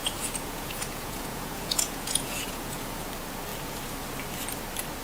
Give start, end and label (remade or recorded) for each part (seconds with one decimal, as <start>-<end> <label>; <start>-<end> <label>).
0.0-3.0 remade; 3.0-5.0 recorded